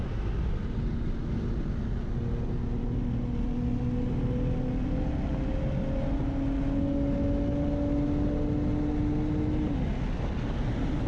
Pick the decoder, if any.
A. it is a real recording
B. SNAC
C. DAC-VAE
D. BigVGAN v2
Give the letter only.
A